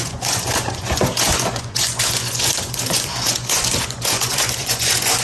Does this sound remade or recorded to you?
remade